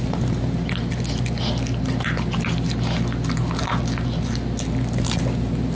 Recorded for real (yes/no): yes